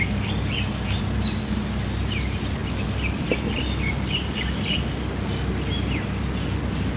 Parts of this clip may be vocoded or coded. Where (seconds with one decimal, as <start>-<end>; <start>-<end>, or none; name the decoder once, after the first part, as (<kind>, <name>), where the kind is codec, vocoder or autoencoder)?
none